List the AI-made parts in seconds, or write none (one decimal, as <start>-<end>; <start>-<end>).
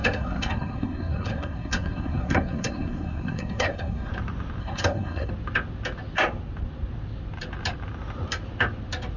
0.0-4.1; 4.6-5.3